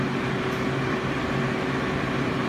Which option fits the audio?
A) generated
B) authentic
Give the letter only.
B